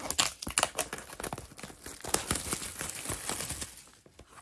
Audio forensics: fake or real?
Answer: real